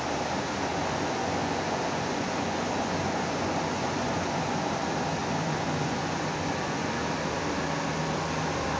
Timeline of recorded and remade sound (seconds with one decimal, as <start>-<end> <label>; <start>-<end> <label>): 0.0-0.7 recorded; 0.7-4.7 remade; 4.7-5.2 recorded; 5.2-6.9 remade; 6.9-8.8 recorded